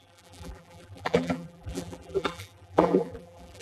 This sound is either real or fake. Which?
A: fake